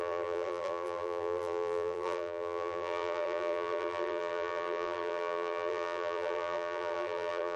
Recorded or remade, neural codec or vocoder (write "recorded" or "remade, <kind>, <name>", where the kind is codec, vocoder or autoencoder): remade, vocoder, BigVGAN v2